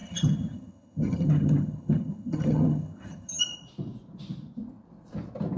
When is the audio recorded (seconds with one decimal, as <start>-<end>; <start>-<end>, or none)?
3.4-5.6